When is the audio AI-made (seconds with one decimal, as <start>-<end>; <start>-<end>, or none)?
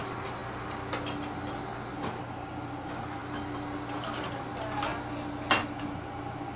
none